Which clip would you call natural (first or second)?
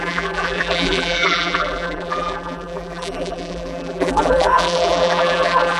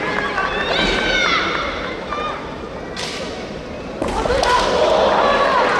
second